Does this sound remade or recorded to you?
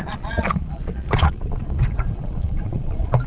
remade